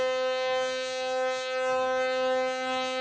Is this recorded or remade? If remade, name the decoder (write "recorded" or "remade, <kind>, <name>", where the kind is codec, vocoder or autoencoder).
recorded